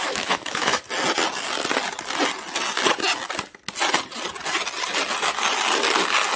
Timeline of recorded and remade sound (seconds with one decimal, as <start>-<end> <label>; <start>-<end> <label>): 0.0-0.8 remade; 0.8-6.4 recorded